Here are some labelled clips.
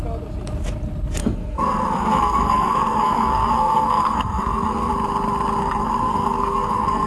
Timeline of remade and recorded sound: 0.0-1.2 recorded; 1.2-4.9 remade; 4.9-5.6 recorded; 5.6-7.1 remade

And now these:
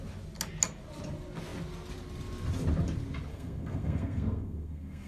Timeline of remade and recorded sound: 0.0-3.3 recorded; 3.3-5.1 remade

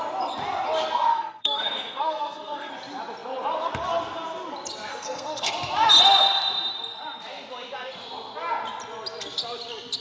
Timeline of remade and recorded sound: 0.0-1.1 recorded; 1.1-2.7 remade; 2.7-4.9 recorded; 4.9-5.5 remade; 5.5-10.0 recorded